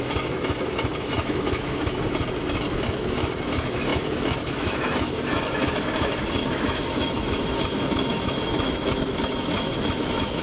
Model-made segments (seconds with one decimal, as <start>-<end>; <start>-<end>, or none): 0.0-10.4